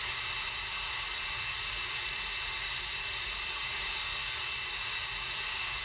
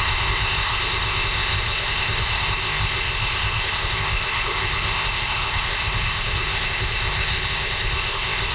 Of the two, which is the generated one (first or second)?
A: second